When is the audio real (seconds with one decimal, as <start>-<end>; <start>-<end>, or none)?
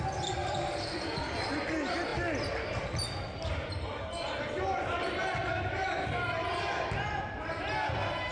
0.0-0.4; 1.2-8.3